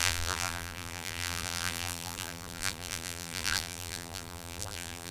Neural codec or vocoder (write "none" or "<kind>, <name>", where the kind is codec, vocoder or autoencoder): vocoder, BigVGAN v2